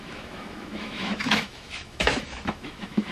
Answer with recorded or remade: remade